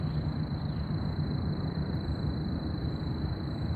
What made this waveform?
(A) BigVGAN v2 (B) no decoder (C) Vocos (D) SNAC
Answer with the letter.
A